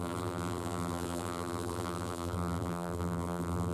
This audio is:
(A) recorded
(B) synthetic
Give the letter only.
B